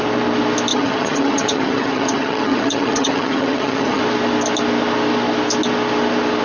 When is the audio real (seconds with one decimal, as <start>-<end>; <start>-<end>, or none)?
0.0-0.7; 4.0-6.4